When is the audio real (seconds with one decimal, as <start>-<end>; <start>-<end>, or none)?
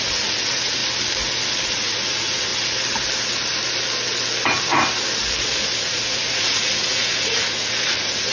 0.8-1.7; 2.5-5.8